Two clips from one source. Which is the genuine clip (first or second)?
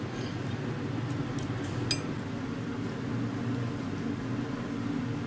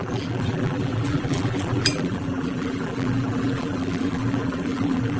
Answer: first